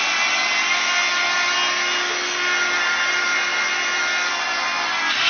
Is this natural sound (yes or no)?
yes